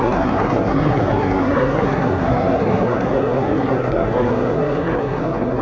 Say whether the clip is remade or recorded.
remade